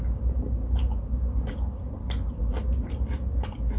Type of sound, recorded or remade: recorded